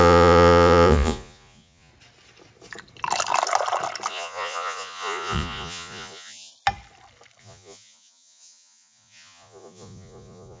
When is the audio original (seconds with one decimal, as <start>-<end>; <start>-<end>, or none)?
1.9-4.1; 6.5-7.4